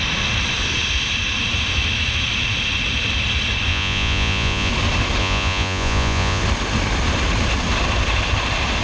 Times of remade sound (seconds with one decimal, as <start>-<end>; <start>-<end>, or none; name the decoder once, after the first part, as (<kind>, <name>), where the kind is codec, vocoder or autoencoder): 3.7-4.7 (vocoder, Vocos); 5.2-6.4